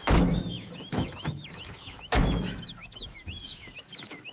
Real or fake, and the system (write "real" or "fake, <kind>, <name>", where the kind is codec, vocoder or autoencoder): fake, autoencoder, DAC-VAE